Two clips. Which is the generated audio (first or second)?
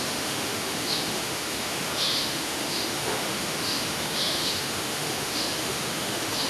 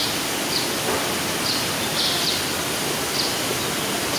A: first